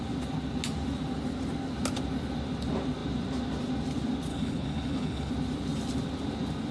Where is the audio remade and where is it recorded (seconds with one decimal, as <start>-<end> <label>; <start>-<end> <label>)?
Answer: 0.0-4.3 recorded; 4.3-5.3 remade; 5.3-6.7 recorded